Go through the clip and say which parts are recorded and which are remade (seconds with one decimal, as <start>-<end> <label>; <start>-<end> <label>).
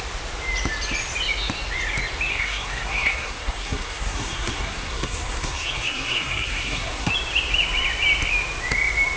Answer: 0.0-2.3 recorded; 2.3-7.1 remade; 7.1-9.2 recorded